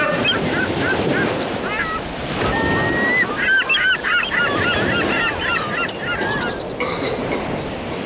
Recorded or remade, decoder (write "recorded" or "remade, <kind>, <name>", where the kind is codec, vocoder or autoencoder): recorded